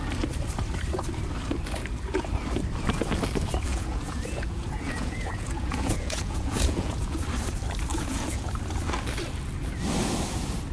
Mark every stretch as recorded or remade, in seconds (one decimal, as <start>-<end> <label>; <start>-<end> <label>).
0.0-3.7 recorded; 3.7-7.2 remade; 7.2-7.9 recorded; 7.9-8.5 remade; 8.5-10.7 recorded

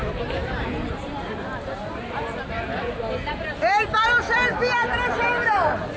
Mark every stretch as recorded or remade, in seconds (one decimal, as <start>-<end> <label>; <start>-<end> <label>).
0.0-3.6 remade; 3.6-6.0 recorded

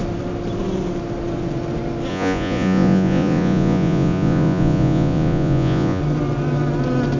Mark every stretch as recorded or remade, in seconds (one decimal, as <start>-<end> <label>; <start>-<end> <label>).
0.0-2.1 recorded; 2.1-6.0 remade; 6.0-7.2 recorded